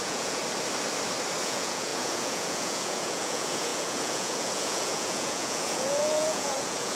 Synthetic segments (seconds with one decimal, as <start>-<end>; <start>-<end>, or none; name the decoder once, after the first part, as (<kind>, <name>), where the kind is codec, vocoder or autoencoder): 0.0-0.4 (vocoder, Vocos); 1.4-7.0